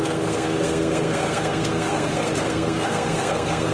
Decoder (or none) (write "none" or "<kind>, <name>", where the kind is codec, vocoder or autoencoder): codec, SNAC